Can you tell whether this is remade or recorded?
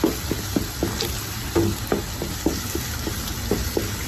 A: recorded